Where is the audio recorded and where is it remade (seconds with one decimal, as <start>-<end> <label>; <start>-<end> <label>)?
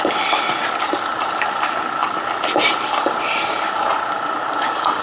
0.0-5.0 recorded